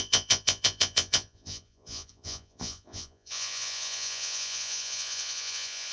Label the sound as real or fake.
fake